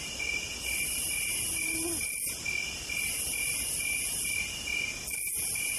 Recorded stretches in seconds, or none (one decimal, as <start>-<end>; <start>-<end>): 0.0-5.8